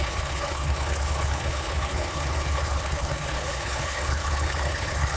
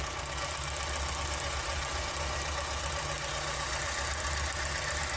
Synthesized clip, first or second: first